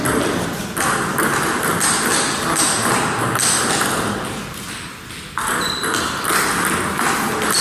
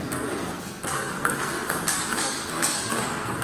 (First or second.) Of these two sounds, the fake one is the second